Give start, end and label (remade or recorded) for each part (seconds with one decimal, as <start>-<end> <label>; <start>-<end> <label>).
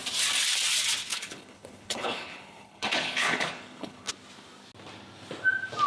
0.0-1.1 recorded; 1.1-4.1 remade; 4.1-5.9 recorded